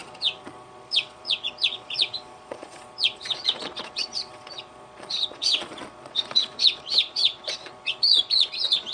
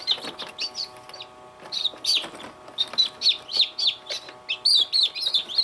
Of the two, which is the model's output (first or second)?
first